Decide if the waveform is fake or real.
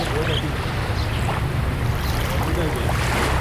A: real